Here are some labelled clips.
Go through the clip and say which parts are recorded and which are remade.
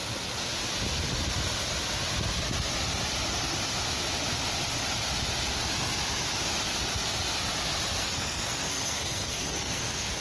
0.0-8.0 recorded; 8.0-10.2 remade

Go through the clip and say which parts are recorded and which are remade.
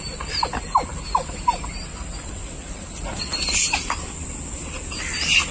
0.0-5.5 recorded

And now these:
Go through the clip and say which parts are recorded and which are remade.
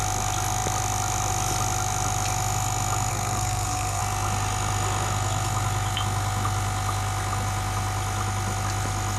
0.0-3.1 recorded; 3.1-4.0 remade; 4.0-9.2 recorded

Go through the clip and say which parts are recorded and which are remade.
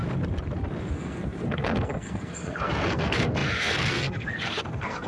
0.0-0.9 recorded; 0.9-5.1 remade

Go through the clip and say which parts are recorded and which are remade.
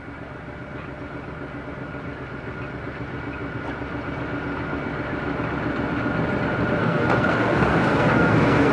0.0-6.8 recorded; 6.8-8.7 remade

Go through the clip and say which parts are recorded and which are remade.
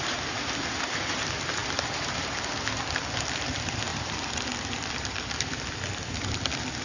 0.0-6.8 recorded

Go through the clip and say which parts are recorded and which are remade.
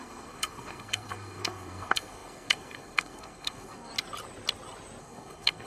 0.0-3.9 remade; 3.9-5.0 recorded; 5.0-5.7 remade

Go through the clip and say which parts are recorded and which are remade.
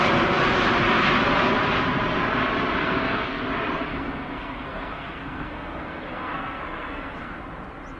0.0-2.8 recorded; 2.8-3.4 remade; 3.4-3.9 recorded; 3.9-7.4 remade; 7.4-8.0 recorded